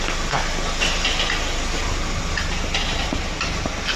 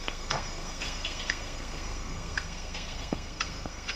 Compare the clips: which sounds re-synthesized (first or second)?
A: second